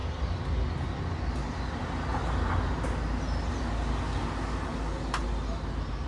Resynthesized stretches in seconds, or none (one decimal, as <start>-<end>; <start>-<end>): none